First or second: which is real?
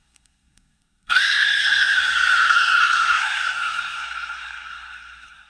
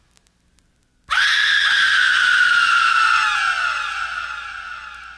second